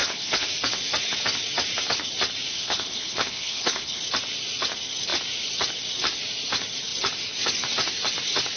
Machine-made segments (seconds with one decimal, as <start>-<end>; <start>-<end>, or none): 0.0-0.5; 2.5-4.0